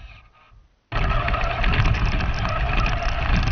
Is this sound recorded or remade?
recorded